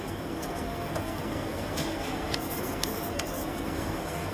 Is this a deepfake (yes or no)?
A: yes